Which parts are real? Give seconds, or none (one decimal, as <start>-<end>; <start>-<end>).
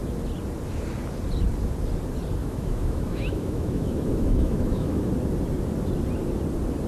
0.0-2.4; 5.1-6.9